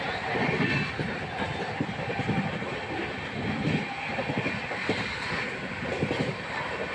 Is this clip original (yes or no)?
yes